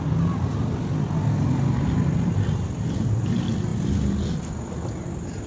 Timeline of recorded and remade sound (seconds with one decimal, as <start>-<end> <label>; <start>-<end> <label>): 0.0-5.5 recorded